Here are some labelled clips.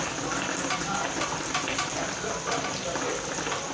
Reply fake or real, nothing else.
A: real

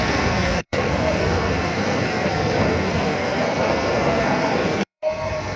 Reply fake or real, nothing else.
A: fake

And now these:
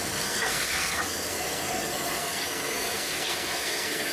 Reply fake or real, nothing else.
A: fake